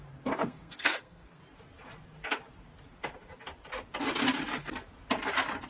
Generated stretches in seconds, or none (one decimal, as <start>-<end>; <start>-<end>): 0.4-1.4